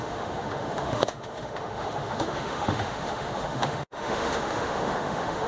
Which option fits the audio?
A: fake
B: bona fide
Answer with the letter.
A